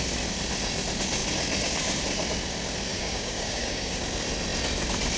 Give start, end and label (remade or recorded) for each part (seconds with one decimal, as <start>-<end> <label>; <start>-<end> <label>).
0.0-2.9 recorded; 2.9-4.0 remade; 4.0-5.2 recorded